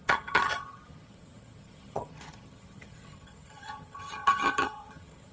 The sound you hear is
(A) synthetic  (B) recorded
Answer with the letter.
A